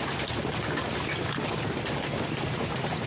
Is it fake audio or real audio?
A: real